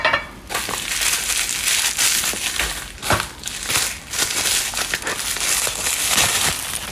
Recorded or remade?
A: recorded